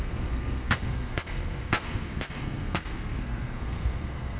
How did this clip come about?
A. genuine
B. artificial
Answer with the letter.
B